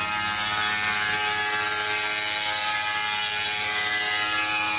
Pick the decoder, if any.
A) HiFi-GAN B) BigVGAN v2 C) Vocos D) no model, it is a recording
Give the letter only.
D